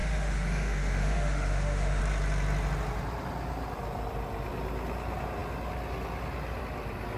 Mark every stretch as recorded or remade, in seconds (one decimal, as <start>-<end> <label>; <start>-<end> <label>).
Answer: 0.0-2.0 remade; 2.0-7.2 recorded